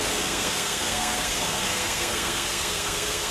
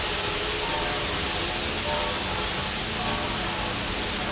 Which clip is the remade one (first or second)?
first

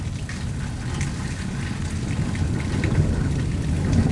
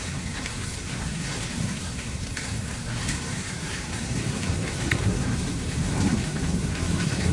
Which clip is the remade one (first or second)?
second